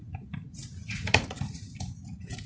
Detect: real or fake fake